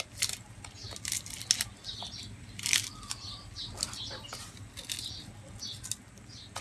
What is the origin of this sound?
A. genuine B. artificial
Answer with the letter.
A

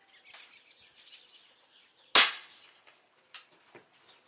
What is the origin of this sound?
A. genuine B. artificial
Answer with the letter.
A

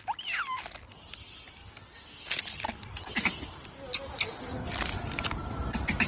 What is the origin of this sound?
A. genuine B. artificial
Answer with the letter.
A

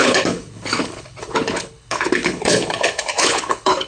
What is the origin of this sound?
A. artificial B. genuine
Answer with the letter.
A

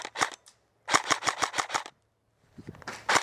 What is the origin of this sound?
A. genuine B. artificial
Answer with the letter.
A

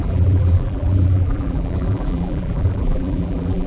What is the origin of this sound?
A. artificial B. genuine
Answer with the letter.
A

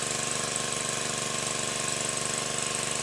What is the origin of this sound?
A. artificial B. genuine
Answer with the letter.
B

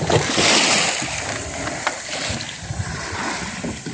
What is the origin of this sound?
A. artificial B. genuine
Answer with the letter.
B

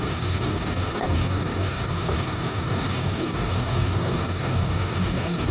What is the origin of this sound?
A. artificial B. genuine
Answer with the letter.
A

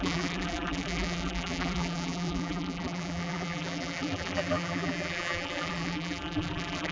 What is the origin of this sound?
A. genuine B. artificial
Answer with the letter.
B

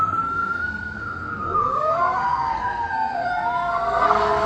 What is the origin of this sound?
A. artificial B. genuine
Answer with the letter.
A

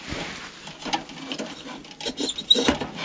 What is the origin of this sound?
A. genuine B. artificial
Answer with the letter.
A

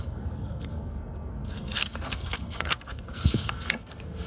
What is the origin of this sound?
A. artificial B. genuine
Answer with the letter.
A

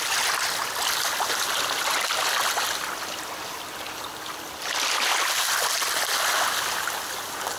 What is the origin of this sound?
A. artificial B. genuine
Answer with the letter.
B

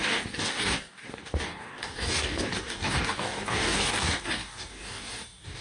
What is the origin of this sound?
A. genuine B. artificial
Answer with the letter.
B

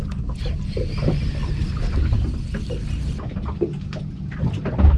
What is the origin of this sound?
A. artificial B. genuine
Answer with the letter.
B